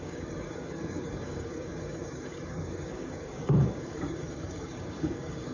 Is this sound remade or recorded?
remade